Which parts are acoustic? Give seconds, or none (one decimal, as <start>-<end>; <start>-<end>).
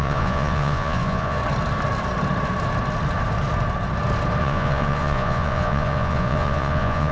1.4-4.4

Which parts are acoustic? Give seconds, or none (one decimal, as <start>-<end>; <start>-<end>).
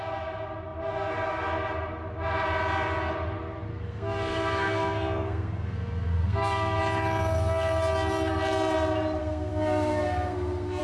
0.0-3.7; 6.8-9.2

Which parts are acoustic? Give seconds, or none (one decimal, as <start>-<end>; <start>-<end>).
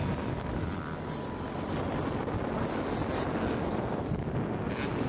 0.0-5.1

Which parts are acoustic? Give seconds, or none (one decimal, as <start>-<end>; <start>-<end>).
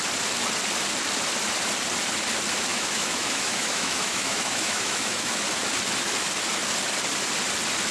0.0-2.7; 5.4-7.9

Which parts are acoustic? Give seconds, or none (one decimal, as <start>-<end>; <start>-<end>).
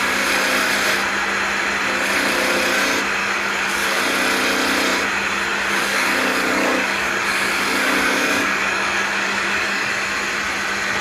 0.0-3.2; 4.0-5.5; 9.9-11.0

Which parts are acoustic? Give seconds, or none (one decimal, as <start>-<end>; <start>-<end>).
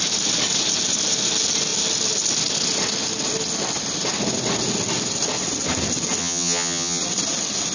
0.0-6.2; 7.0-7.7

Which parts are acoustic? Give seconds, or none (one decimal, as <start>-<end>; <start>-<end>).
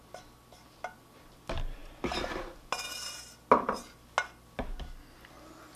0.0-5.8